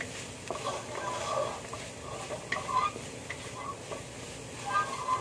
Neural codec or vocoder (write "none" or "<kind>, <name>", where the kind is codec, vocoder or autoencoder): none